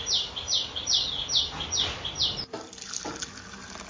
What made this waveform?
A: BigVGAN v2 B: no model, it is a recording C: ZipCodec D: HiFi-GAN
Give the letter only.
B